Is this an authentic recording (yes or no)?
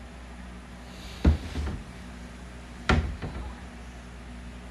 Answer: yes